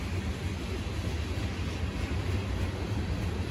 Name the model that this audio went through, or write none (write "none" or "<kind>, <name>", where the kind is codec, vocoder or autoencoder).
none